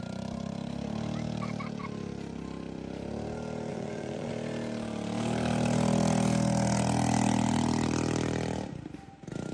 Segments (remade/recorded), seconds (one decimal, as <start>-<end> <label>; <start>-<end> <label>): 0.0-3.7 recorded; 3.7-4.3 remade; 4.3-9.5 recorded